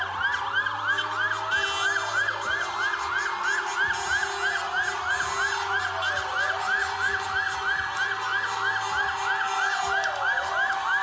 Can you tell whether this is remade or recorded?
recorded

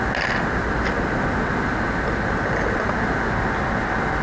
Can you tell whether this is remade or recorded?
recorded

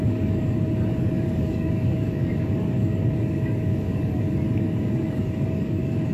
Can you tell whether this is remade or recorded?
remade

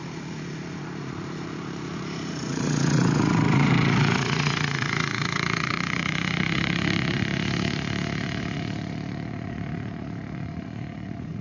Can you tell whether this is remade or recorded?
remade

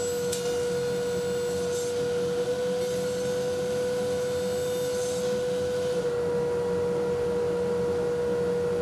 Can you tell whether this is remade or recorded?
recorded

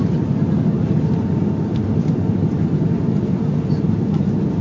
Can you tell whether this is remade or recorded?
recorded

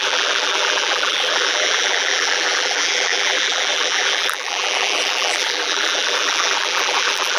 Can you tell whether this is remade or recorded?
remade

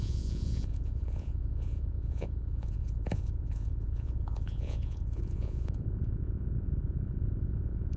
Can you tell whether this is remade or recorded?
remade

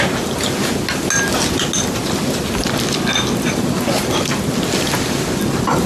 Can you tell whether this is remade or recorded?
recorded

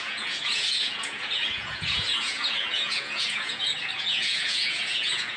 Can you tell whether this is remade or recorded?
remade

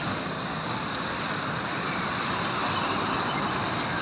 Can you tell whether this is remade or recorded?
recorded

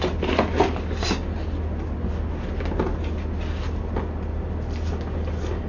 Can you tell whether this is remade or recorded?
recorded